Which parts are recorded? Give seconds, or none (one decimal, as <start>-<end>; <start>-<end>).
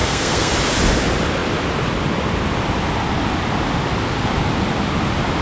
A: 0.5-5.4